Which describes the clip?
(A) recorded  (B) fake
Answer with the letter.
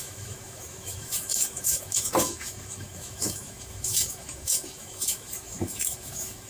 B